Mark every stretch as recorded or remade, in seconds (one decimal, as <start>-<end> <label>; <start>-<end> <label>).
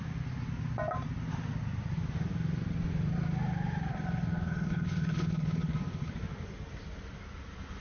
0.0-3.9 recorded; 3.9-6.1 remade; 6.1-7.8 recorded